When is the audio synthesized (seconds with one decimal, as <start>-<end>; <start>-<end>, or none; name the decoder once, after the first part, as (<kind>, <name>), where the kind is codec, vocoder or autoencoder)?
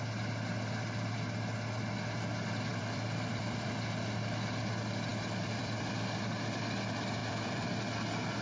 2.7-3.7 (vocoder, BigVGAN v2); 5.1-5.9; 7.2-7.8